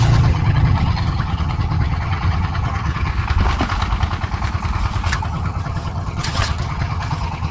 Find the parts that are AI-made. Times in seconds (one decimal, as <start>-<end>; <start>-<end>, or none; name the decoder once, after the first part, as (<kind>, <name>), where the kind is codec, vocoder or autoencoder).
0.0-3.1 (vocoder, HiFi-GAN); 5.1-7.5